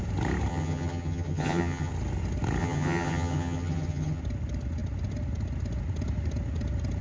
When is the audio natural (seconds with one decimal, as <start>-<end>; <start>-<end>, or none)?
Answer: 0.0-0.5; 1.9-2.6; 4.2-7.0